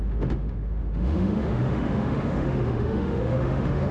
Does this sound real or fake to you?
fake